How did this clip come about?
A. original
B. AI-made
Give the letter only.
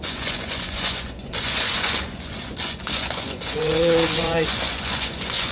B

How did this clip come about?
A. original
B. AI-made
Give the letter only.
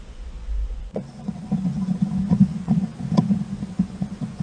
B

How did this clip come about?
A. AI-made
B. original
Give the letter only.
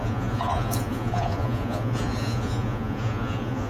A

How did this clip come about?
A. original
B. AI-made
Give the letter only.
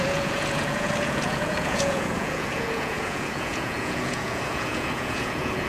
B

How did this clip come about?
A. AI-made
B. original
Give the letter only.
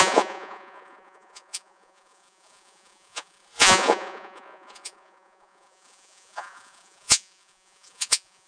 A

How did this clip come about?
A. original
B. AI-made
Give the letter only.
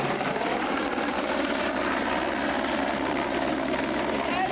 A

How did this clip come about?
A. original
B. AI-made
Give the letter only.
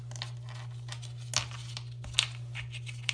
A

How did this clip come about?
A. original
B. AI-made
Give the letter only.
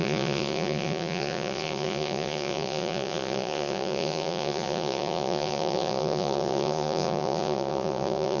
B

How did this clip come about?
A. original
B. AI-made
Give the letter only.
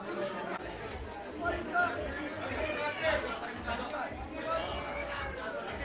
A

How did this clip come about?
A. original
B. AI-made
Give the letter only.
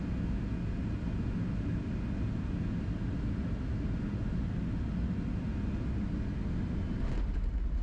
A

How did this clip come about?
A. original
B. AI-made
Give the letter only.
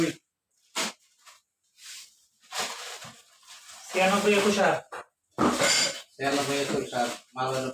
A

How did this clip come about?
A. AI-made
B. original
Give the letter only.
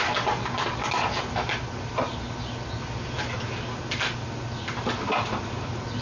B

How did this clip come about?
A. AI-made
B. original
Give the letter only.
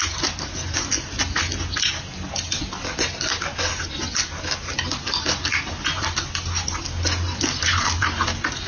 B